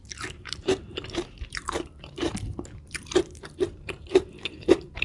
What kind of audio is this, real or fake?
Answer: fake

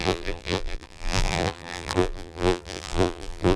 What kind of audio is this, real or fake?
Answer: fake